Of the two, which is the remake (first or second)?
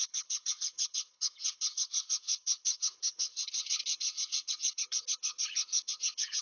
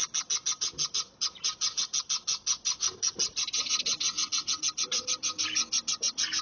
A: first